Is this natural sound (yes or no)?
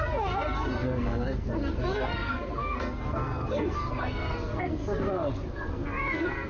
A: no